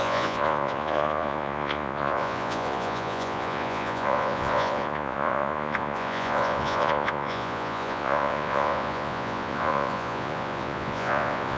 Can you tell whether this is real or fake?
fake